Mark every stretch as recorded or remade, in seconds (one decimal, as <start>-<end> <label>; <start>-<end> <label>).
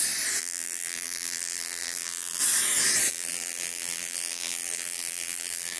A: 0.0-0.4 recorded; 0.4-2.4 remade; 2.4-3.1 recorded; 3.1-5.8 remade